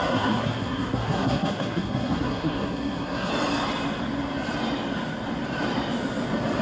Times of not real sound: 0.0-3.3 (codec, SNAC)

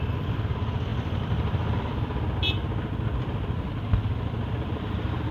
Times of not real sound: none

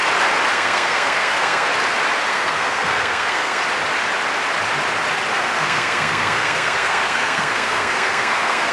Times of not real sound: 0.5-1.7 (codec, SNAC); 2.3-3.6; 5.3-8.7

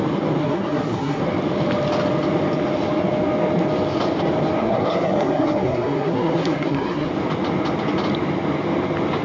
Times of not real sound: 0.4-1.2 (codec, SNAC); 4.6-7.1

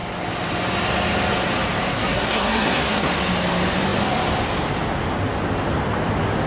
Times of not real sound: 1.9-3.1 (codec, SNAC)